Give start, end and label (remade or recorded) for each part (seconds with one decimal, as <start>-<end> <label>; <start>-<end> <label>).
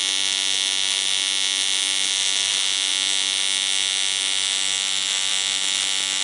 0.0-6.2 recorded